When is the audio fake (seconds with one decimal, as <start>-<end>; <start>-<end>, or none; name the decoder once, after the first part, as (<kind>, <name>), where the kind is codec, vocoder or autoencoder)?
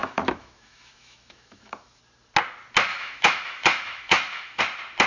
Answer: 0.0-2.0 (autoencoder, DAC-VAE); 2.9-4.6